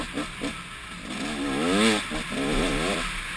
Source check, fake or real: real